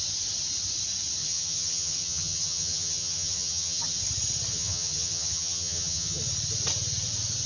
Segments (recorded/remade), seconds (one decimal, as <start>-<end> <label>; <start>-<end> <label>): 0.0-1.2 recorded; 1.2-4.0 remade; 4.0-4.5 recorded; 4.5-6.2 remade; 6.2-7.5 recorded